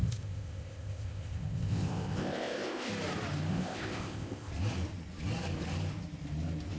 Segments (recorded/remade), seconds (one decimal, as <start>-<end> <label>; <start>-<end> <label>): 0.0-2.9 remade; 2.9-3.5 recorded; 3.5-4.5 remade; 4.5-6.8 recorded